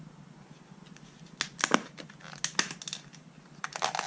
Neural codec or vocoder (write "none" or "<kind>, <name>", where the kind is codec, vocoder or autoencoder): none